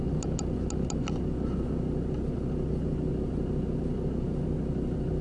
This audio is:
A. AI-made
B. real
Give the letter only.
B